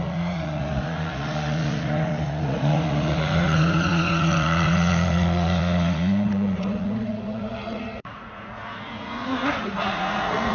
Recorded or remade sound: remade